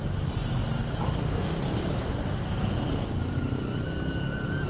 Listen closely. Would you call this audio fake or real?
real